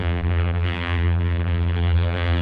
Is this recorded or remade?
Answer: remade